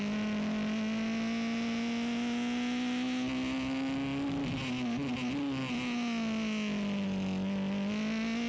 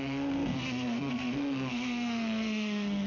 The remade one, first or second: second